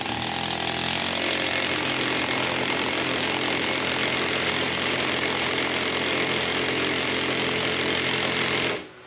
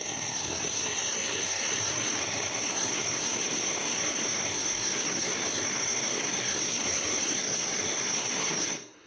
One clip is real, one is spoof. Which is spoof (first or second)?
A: second